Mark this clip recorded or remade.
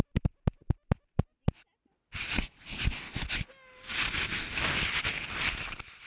recorded